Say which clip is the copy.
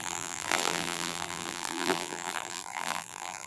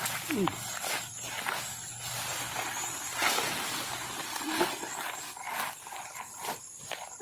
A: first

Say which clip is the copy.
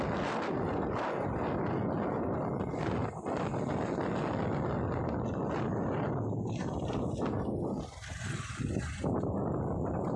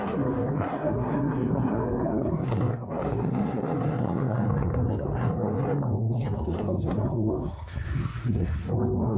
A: second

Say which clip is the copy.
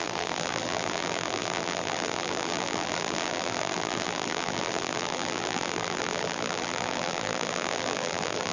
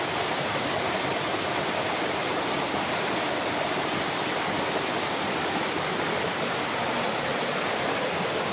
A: first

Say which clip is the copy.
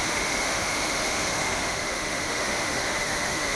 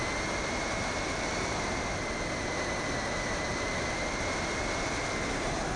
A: first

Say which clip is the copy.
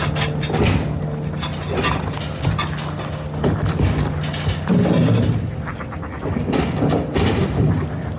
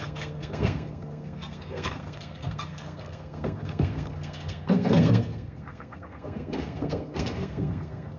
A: second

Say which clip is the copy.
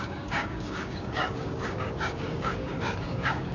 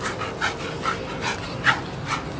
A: first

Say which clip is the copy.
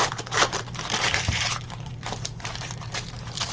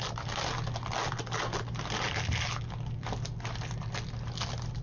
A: first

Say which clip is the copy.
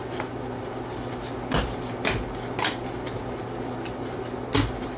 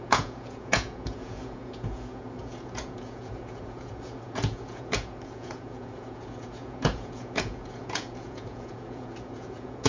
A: second